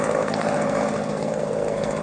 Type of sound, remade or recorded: remade